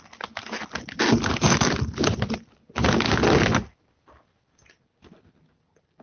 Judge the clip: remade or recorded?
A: recorded